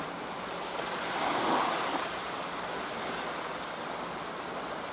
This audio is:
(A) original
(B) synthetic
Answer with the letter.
A